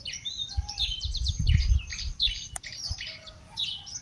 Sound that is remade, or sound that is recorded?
remade